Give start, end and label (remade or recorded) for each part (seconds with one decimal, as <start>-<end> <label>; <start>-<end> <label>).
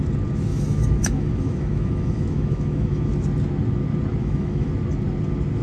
0.0-0.5 recorded; 0.5-3.0 remade; 3.0-4.2 recorded; 4.2-4.7 remade; 4.7-5.6 recorded